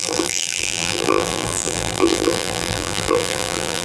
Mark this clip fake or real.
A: fake